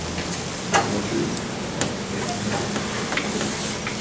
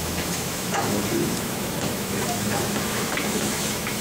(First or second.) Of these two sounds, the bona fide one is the first